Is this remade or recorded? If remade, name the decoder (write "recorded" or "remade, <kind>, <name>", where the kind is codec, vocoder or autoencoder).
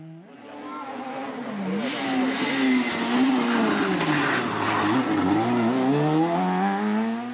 recorded